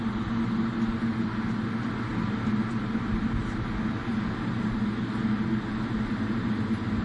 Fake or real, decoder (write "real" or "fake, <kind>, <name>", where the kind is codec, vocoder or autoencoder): real